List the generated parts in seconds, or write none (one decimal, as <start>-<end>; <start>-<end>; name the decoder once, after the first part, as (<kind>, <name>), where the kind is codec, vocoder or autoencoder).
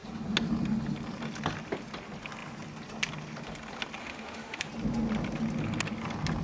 4.0-4.7 (autoencoder, DAC-VAE)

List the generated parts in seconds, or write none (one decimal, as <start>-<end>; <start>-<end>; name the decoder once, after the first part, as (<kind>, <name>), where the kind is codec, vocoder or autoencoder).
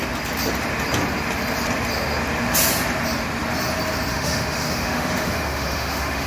4.1-6.3 (autoencoder, DAC-VAE)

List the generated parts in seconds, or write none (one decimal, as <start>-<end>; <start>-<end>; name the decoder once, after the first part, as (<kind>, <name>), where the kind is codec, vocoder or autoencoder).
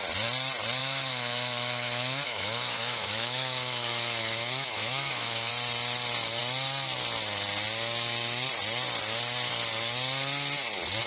0.8-5.5 (autoencoder, DAC-VAE)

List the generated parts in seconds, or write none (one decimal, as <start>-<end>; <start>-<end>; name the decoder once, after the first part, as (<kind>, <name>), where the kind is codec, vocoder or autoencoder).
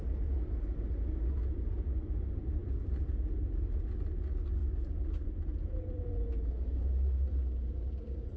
none